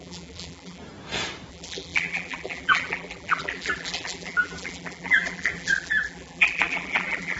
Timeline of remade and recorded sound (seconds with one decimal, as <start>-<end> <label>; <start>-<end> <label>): 0.0-0.8 remade; 0.8-1.5 recorded; 1.5-7.4 remade